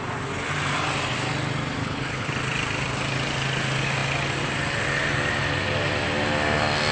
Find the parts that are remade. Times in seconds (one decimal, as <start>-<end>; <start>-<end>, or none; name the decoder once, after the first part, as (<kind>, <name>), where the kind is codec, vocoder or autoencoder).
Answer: 1.8-2.3 (codec, HILCodec)